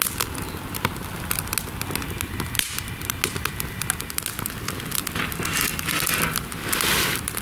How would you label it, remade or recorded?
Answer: recorded